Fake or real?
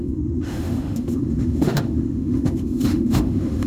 fake